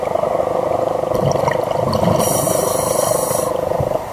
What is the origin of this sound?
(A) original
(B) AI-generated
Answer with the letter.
A